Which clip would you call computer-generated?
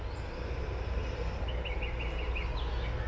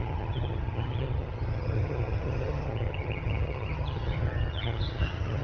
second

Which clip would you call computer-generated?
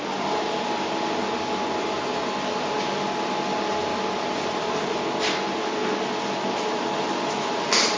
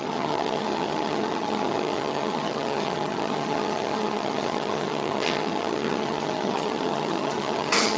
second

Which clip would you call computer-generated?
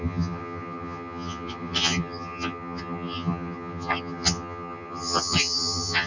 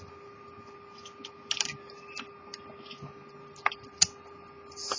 first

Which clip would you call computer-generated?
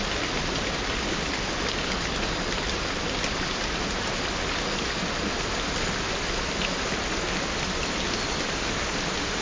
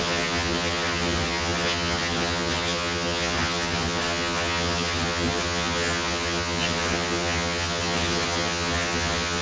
second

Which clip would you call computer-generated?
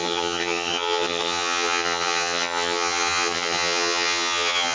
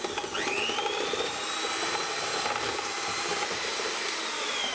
first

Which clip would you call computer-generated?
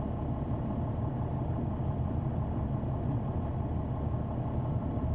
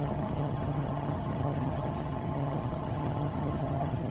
second